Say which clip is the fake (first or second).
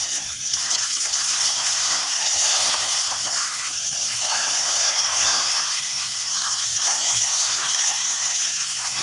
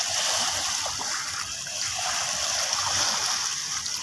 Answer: first